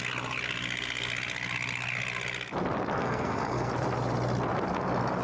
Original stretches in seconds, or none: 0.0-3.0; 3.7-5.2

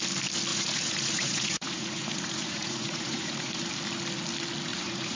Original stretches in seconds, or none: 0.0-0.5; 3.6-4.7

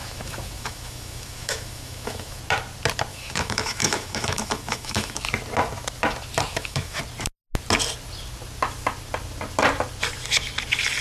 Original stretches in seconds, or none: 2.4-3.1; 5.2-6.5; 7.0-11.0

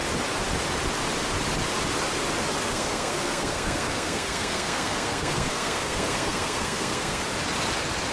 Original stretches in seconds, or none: 0.0-2.6; 7.2-8.1

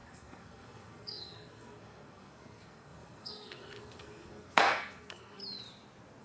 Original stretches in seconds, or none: 5.4-6.2

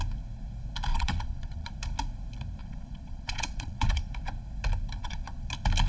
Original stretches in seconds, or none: 0.0-0.9; 1.7-2.6; 4.0-5.0; 5.5-5.9